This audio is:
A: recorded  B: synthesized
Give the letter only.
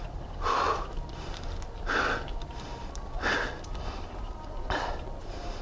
A